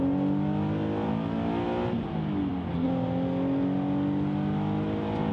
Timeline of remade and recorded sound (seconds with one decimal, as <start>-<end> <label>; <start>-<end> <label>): 0.0-5.3 recorded